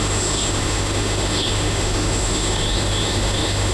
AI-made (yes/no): yes